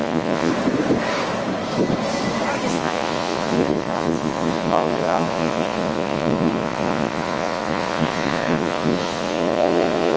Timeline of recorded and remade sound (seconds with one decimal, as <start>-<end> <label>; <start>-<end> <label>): 0.0-0.5 remade; 0.5-2.7 recorded; 2.7-10.2 remade